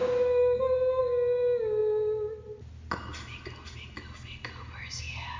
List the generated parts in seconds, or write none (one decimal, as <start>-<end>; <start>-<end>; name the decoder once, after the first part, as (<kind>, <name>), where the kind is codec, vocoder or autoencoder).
none